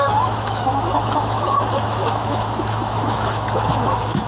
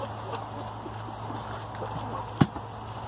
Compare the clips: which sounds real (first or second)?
second